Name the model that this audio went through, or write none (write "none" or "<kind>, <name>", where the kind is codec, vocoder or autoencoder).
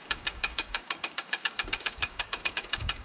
codec, DAC